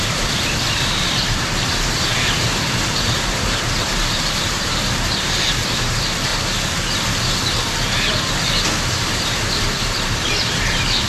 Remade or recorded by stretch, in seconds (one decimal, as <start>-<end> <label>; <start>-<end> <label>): 0.0-6.3 remade; 6.3-9.1 recorded; 9.1-11.1 remade